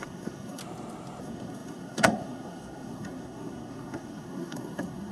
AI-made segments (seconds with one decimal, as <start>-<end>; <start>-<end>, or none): 0.0-0.6; 1.2-5.1